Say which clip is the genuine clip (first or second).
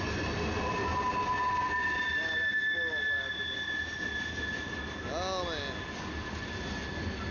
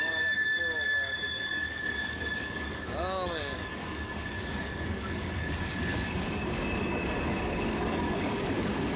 first